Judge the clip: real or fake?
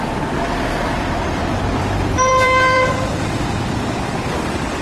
fake